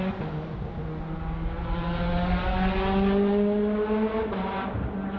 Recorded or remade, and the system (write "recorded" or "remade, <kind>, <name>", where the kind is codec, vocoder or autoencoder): recorded